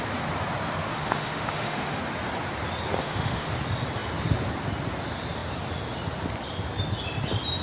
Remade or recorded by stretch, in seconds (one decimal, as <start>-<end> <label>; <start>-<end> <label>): 0.0-0.9 recorded; 0.9-2.0 remade; 2.0-3.0 recorded; 3.0-3.5 remade; 3.5-7.6 recorded